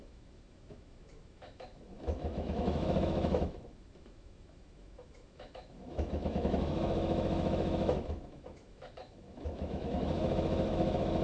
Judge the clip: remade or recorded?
remade